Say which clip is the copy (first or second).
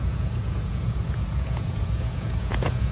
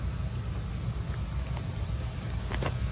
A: first